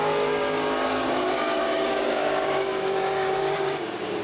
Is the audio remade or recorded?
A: remade